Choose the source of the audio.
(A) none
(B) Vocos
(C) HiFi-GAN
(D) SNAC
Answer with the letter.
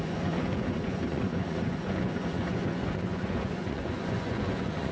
B